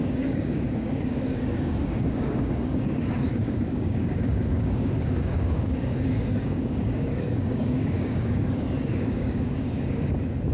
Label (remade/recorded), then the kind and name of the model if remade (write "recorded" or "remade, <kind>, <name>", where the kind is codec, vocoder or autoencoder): remade, codec, DAC